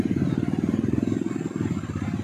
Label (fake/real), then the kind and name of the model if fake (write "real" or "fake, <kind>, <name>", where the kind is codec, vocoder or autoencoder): real